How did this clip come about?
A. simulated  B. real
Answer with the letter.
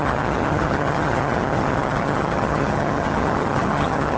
A